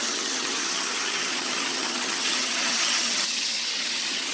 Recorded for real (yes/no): no